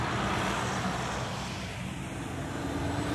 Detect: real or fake real